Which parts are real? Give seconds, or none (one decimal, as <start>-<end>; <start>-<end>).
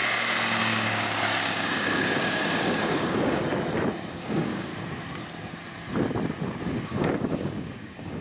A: 0.0-0.6; 3.4-4.2; 4.7-6.6